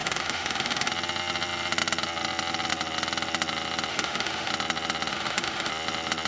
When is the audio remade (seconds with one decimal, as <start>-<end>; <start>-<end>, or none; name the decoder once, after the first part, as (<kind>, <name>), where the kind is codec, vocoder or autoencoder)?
0.0-0.9 (autoencoder, DAC-VAE); 3.9-4.5; 5.1-5.7